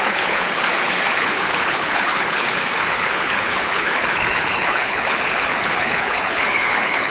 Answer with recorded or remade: remade